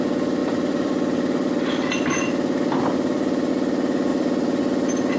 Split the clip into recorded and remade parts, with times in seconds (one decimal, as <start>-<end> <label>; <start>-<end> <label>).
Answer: 0.0-0.4 recorded; 0.4-3.5 remade; 3.5-4.1 recorded; 4.1-4.6 remade; 4.6-5.2 recorded